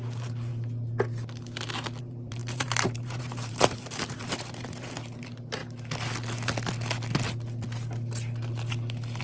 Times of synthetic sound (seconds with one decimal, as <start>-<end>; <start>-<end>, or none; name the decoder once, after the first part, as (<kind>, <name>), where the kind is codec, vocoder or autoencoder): 0.0-0.5 (vocoder, BigVGAN v2); 2.0-5.6